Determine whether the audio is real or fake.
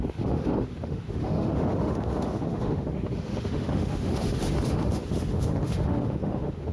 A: fake